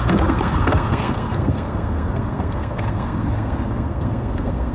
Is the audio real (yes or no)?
no